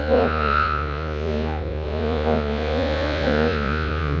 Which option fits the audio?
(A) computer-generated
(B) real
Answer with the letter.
A